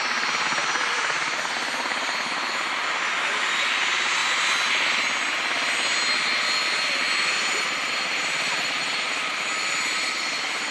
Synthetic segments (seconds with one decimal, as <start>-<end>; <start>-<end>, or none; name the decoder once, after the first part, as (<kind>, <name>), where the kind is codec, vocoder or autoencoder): none